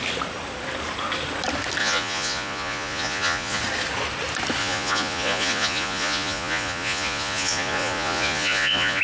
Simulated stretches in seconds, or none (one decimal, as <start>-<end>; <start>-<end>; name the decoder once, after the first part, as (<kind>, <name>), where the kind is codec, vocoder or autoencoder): 1.8-3.6 (vocoder, Vocos); 4.6-9.0